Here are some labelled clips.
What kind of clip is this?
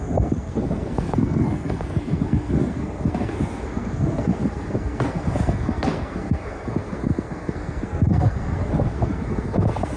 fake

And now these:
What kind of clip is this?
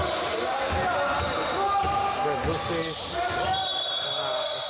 real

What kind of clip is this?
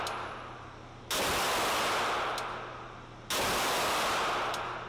real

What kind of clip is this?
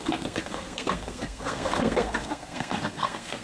fake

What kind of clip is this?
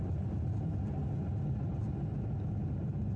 real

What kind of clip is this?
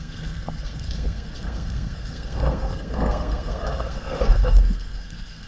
fake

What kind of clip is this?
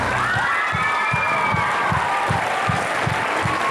real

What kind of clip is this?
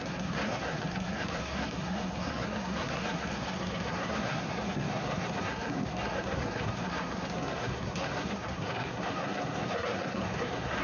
fake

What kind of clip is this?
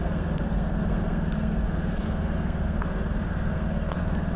fake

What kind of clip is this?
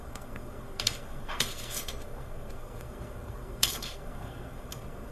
fake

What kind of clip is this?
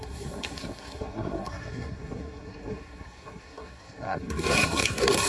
fake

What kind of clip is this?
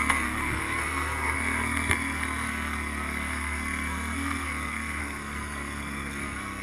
fake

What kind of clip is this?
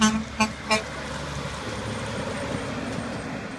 real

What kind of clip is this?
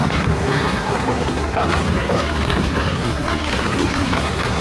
fake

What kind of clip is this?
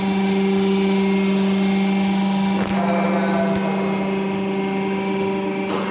real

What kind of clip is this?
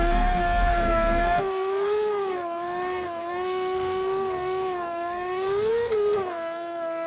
fake